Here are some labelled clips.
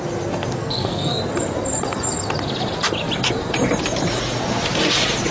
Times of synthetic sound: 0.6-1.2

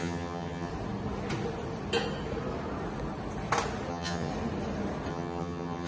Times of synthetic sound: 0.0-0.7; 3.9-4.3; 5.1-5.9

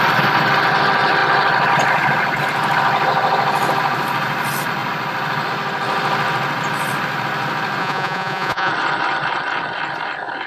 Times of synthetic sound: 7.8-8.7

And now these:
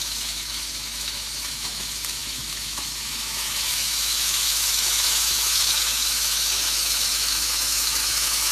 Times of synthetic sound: 0.0-8.5

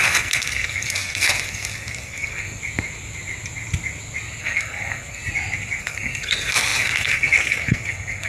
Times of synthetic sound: 0.0-2.6; 4.4-5.2; 5.8-8.3

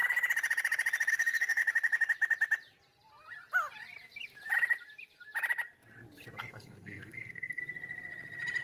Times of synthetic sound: 1.1-1.6; 6.4-7.6